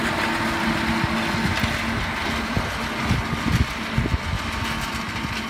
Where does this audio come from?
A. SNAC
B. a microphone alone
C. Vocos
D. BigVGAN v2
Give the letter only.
B